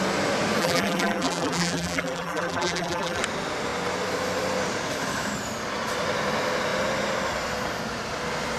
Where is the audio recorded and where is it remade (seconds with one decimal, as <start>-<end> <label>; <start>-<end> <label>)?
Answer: 0.0-0.6 recorded; 0.6-3.2 remade; 3.2-8.6 recorded